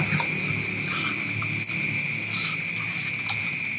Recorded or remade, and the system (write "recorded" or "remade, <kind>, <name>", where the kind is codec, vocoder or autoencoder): recorded